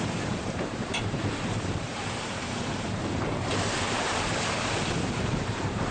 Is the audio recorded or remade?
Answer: remade